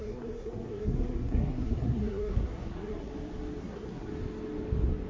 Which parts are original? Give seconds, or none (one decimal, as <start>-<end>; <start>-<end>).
3.1-3.6; 4.1-5.1